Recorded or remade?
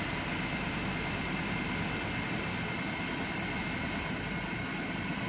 recorded